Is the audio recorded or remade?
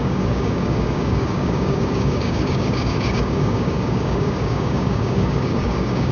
remade